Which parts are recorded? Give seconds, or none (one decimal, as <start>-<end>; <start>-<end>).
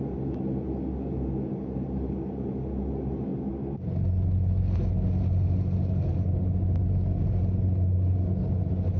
0.0-9.0